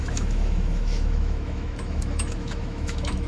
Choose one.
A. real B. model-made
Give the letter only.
B